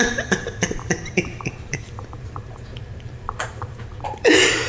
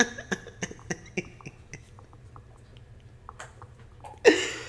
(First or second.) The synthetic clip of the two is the first